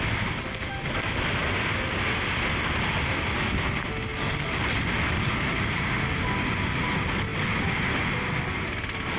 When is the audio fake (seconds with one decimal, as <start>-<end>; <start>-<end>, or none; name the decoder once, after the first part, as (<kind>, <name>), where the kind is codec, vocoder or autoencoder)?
4.1-5.8 (vocoder, BigVGAN v2)